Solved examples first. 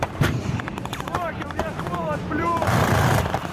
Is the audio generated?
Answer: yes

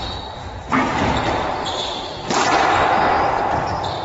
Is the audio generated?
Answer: no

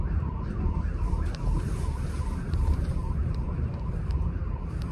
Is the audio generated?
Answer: yes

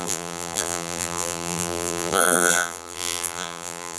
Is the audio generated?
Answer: yes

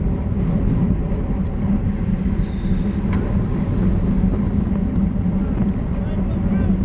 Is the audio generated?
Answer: no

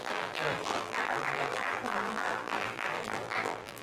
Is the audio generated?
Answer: yes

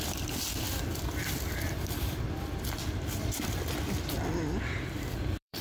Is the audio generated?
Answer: yes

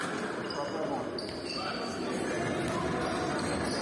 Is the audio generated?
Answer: no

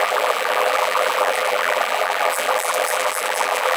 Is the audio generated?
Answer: yes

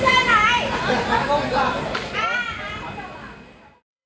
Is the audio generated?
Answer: yes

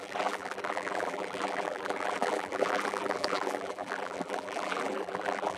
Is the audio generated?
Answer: yes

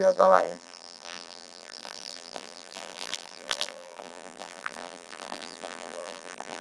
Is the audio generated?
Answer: yes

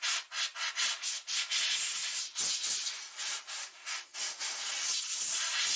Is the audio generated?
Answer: no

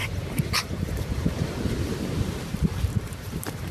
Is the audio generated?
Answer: yes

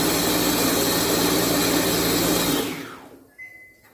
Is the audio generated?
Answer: no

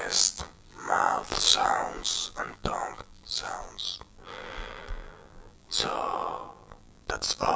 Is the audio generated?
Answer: yes